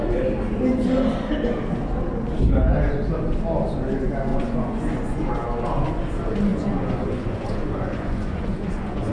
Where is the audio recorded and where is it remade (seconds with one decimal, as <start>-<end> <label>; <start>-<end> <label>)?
0.0-4.3 recorded; 4.3-5.3 remade; 5.3-6.5 recorded; 6.5-9.1 remade